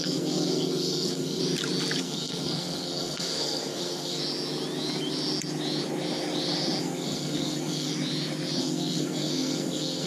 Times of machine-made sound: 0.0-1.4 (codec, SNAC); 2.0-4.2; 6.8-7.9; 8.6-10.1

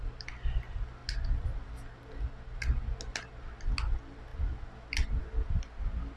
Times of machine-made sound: none